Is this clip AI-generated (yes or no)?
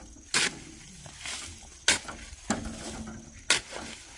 no